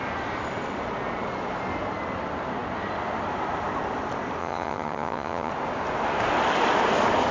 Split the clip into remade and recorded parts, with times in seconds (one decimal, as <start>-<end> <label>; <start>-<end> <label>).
0.0-4.4 recorded; 4.4-5.5 remade; 5.5-7.3 recorded